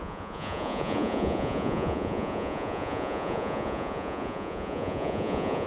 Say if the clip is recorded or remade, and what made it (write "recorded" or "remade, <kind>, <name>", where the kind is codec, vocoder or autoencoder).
remade, vocoder, Vocos